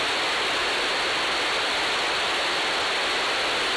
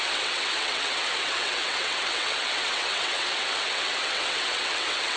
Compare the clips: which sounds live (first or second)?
first